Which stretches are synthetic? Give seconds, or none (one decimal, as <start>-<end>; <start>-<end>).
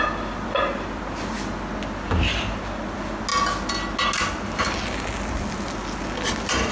none